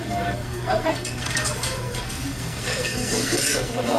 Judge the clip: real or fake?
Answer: fake